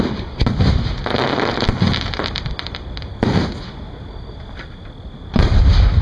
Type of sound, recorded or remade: recorded